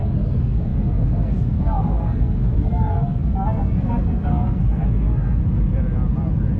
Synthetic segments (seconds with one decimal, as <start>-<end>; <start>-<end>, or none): 0.0-5.4